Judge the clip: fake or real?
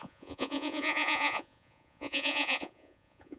fake